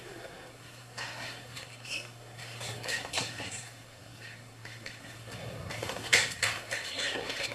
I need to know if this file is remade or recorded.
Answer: remade